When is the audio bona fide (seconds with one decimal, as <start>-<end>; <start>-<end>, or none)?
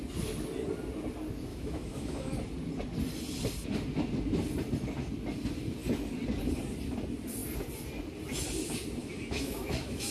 0.0-1.5; 2.3-9.0